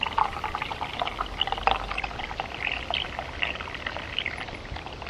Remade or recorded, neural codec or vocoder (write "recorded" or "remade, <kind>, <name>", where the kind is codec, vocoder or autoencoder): recorded